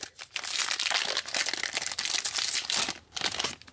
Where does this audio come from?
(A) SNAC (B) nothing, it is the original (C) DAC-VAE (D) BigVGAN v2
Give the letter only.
B